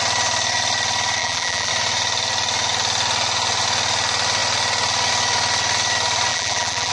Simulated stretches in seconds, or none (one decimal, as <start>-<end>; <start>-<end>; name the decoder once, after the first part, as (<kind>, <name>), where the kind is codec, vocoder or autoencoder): 1.2-1.7 (vocoder, BigVGAN v2); 6.3-6.9